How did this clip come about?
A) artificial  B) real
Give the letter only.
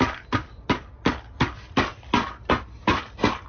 A